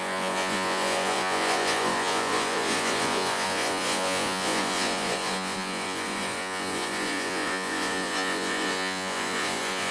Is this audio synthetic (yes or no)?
yes